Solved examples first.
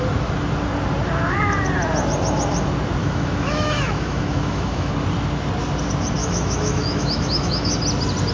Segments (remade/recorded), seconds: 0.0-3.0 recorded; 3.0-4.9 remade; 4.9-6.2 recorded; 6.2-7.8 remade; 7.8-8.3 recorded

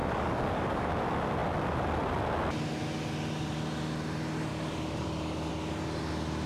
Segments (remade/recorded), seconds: 0.0-0.9 remade; 0.9-4.5 recorded; 4.5-5.5 remade; 5.5-6.5 recorded

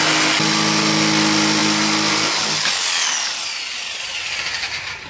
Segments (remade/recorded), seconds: 0.0-5.1 recorded

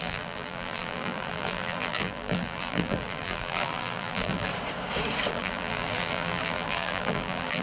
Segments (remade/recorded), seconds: 0.0-4.5 remade; 4.5-5.3 recorded; 5.3-7.6 remade

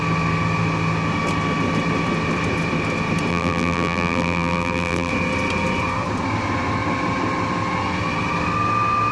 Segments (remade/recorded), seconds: 0.0-3.3 recorded; 3.3-5.1 remade; 5.1-9.1 recorded